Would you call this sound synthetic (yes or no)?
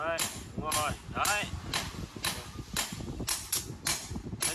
no